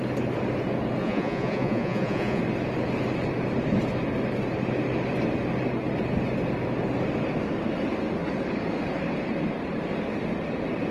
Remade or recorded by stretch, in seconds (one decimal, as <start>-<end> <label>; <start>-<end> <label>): 0.0-1.0 recorded; 1.0-2.4 remade; 2.4-10.9 recorded